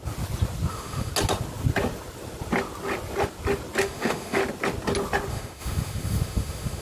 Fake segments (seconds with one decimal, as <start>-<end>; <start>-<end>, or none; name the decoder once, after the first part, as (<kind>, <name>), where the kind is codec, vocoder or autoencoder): 0.7-1.1 (autoencoder, DAC-VAE); 3.8-4.4; 5.3-6.8